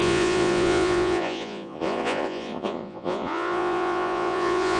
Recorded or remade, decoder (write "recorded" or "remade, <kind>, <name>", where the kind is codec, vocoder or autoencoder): remade, vocoder, Vocos